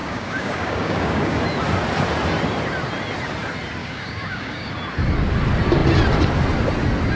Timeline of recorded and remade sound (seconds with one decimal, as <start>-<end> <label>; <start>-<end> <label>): 0.0-1.4 remade; 1.4-3.8 recorded; 3.8-4.7 remade; 4.7-7.2 recorded